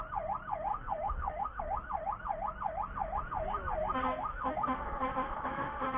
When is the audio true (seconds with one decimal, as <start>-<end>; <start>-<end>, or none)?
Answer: 0.0-0.7; 1.6-4.3